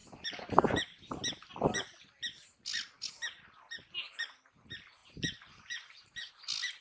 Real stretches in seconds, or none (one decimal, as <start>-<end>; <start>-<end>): 0.0-5.0; 6.3-6.8